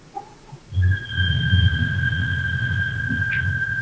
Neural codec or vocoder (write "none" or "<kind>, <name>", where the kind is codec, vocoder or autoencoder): vocoder, Vocos